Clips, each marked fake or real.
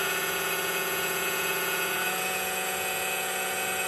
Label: fake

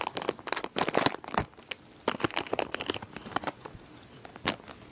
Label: real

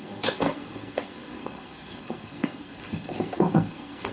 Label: fake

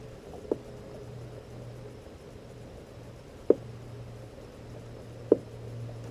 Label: real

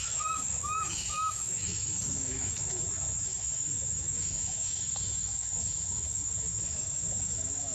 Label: fake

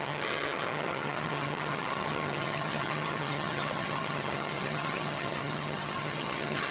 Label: fake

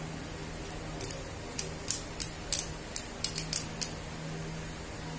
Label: real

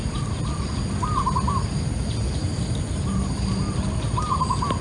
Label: real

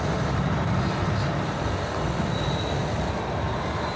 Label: real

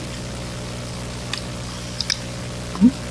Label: real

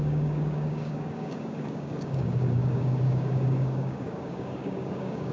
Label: fake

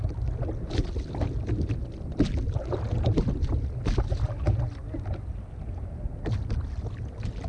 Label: real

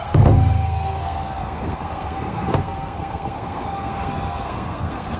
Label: fake